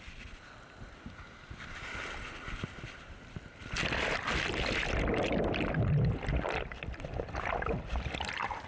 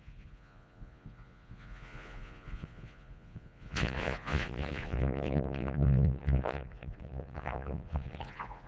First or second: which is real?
first